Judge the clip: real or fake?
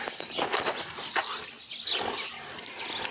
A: real